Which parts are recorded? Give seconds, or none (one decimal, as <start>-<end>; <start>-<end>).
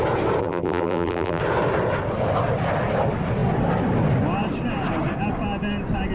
0.0-0.4; 1.4-6.1